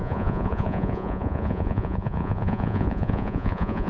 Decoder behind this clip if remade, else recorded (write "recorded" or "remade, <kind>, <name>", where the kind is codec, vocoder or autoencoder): remade, vocoder, Vocos